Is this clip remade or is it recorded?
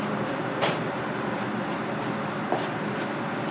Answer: recorded